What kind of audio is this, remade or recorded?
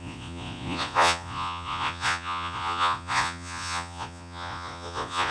remade